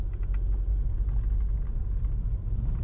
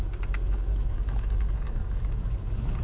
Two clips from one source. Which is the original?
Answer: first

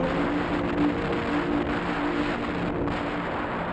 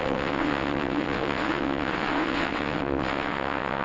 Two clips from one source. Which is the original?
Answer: first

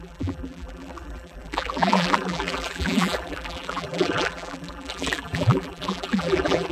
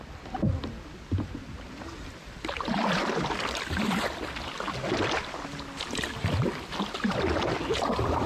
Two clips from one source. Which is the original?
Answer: second